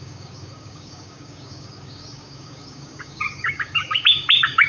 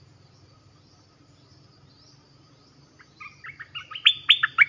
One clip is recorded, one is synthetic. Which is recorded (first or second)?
second